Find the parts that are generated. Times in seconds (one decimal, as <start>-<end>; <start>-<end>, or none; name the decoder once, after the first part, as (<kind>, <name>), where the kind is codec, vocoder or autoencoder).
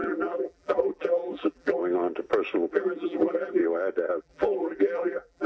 0.0-1.8 (vocoder, BigVGAN v2); 2.7-3.6; 4.2-5.5